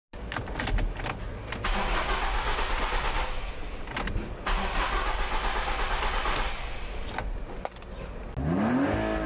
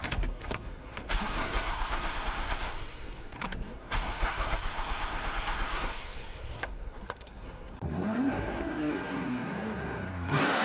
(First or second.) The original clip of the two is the first